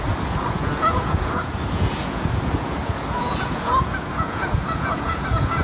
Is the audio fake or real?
fake